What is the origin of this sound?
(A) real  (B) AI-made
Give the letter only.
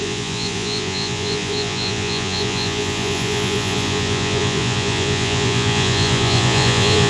B